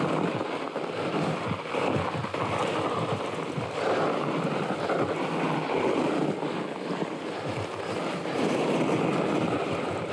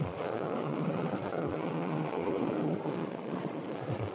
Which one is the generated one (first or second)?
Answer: second